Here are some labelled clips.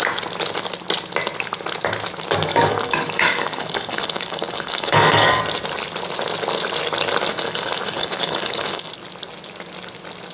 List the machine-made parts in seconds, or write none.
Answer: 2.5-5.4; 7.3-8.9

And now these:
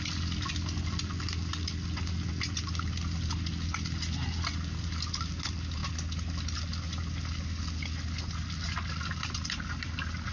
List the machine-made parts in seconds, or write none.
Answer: none

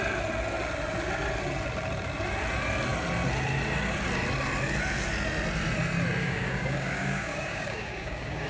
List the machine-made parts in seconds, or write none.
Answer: 6.2-8.5

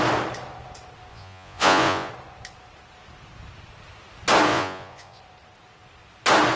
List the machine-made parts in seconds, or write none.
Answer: 1.1-2.1; 4.5-5.2